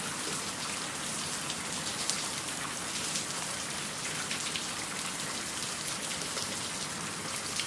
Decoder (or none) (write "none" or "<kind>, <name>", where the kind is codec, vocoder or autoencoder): none